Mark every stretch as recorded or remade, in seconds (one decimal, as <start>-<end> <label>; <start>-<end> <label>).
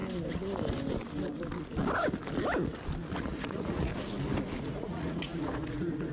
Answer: 0.0-3.2 recorded; 3.2-3.9 remade; 3.9-4.6 recorded; 4.6-6.1 remade